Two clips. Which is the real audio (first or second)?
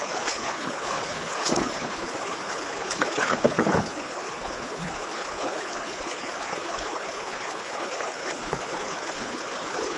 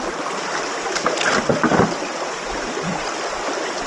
second